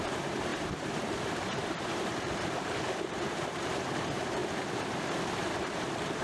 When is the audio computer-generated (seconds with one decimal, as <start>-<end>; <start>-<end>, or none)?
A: 0.0-6.2